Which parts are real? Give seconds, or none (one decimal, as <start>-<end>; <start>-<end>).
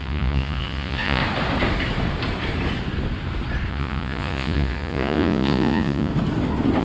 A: 1.2-3.7; 6.1-6.8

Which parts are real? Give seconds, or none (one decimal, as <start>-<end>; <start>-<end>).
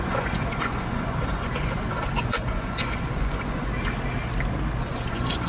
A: 3.7-4.8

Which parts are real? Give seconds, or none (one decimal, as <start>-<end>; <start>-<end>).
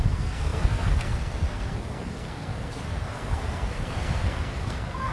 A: none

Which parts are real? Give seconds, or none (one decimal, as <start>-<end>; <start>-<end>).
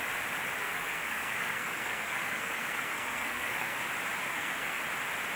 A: 0.0-0.6; 3.8-4.2; 4.8-5.4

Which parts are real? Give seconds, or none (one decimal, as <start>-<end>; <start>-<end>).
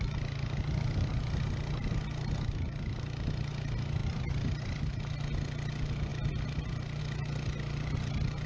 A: 0.0-4.0; 5.0-8.5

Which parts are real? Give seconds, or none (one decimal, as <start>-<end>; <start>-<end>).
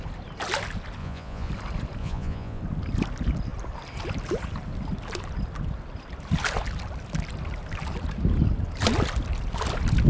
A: 0.0-1.0; 1.5-2.0; 2.6-10.1